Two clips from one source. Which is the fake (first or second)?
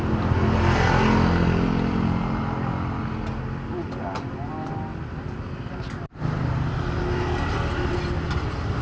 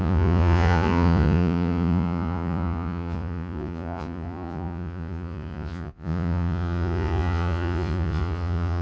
second